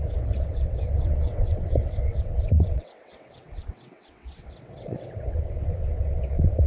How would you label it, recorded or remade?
remade